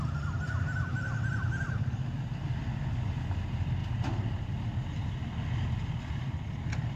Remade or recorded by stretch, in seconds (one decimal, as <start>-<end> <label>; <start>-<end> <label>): 0.0-0.9 recorded; 0.9-2.6 remade; 2.6-3.8 recorded; 3.8-4.5 remade; 4.5-7.0 recorded